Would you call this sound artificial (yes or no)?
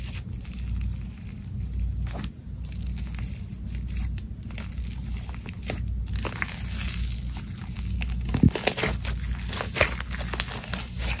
no